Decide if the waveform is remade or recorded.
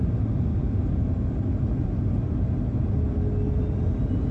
recorded